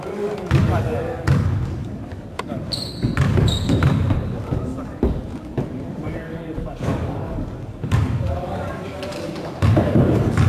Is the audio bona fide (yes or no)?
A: no